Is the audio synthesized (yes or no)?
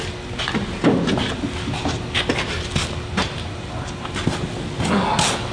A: no